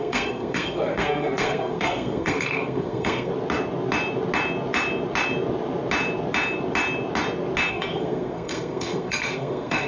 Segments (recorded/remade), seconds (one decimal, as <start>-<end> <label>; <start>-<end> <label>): 0.0-3.3 remade; 3.3-7.7 recorded; 7.7-9.9 remade